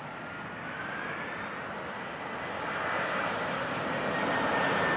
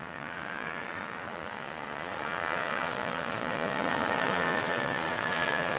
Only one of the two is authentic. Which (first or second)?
first